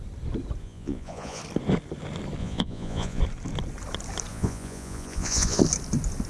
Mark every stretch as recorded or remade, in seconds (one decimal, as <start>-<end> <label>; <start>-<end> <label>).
0.0-0.6 recorded; 0.6-1.4 remade; 1.4-2.4 recorded; 2.4-3.2 remade; 3.2-4.3 recorded; 4.3-5.6 remade; 5.6-6.3 recorded